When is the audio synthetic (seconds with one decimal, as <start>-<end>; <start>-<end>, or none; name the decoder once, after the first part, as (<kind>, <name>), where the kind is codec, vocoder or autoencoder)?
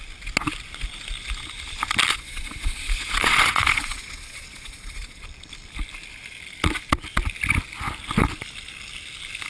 2.1-5.2 (vocoder, Vocos)